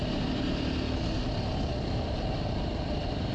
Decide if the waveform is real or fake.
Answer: real